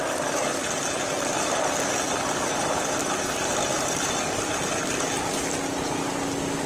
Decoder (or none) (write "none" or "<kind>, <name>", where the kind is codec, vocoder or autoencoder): none